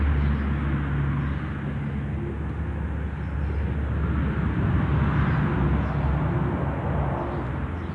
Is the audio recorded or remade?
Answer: recorded